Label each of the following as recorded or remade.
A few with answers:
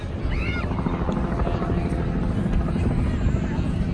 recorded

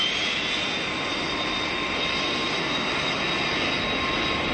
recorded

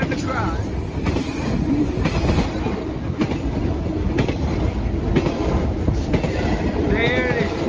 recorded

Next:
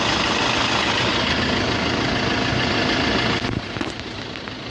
recorded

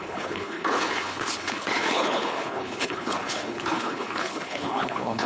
remade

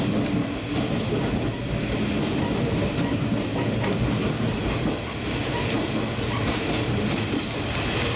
recorded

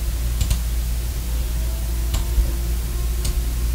recorded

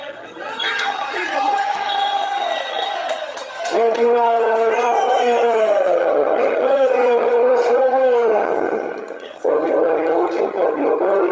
remade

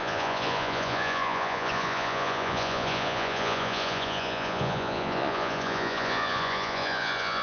remade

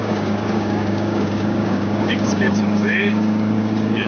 remade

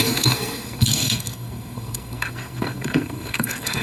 remade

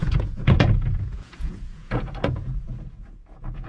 remade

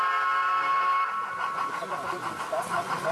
recorded